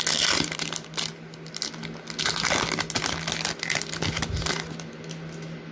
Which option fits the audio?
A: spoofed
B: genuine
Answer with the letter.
B